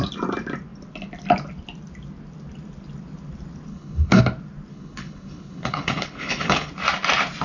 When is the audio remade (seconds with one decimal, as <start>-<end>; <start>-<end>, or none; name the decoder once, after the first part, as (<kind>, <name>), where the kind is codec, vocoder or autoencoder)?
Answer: 3.7-4.2 (codec, HILCodec); 4.7-6.7